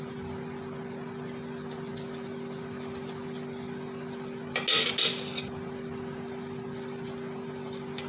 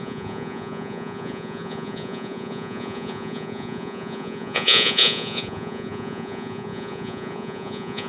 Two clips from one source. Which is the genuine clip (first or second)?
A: first